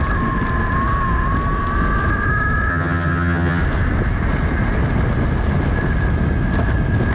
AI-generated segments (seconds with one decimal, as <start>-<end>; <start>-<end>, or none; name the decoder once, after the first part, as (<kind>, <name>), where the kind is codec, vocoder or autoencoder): 2.7-3.6 (vocoder, HiFi-GAN)